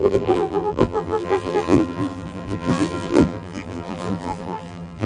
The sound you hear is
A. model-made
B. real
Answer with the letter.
A